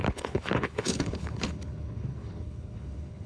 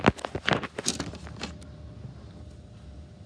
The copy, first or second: first